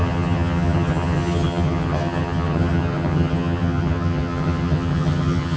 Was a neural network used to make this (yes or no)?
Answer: yes